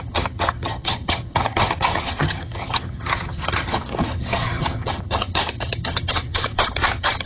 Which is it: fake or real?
fake